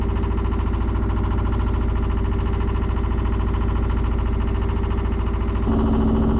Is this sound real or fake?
real